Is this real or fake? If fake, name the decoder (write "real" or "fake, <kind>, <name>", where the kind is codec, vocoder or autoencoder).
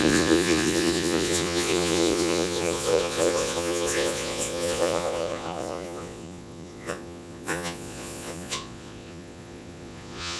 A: fake, vocoder, Vocos